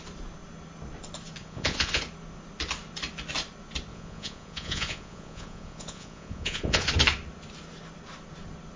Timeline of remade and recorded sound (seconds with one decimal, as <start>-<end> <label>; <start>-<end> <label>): 0.0-1.4 recorded; 1.4-2.0 remade; 2.0-3.9 recorded; 3.9-6.9 remade; 6.9-8.8 recorded